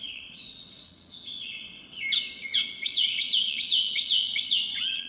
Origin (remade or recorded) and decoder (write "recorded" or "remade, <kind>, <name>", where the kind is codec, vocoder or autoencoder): remade, vocoder, WaveNeXt